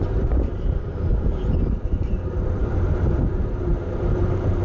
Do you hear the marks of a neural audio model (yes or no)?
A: yes